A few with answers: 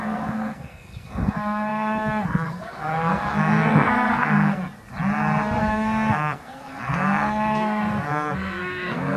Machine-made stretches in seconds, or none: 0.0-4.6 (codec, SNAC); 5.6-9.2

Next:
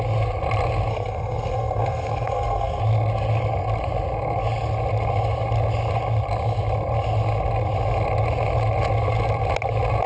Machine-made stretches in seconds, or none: 0.9-2.8 (codec, SNAC)

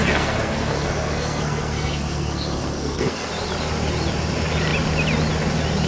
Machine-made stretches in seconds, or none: 0.0-3.3 (codec, SNAC)

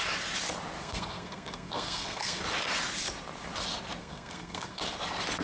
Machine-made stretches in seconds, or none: 0.8-2.4 (codec, SNAC); 4.0-4.8

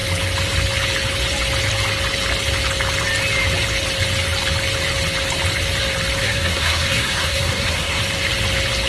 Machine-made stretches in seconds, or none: 6.2-8.0 (codec, SNAC)

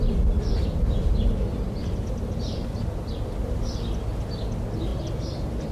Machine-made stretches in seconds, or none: none

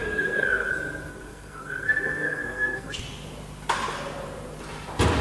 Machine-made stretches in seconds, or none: 0.0-0.7 (codec, SNAC); 1.1-3.0